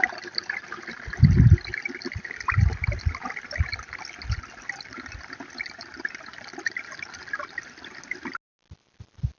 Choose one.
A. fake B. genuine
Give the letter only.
B